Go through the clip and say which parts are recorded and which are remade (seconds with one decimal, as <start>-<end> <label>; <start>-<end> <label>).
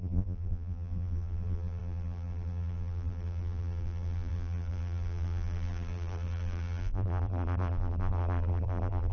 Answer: 0.0-9.1 remade